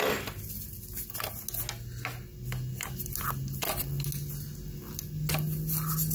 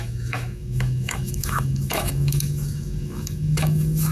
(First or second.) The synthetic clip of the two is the second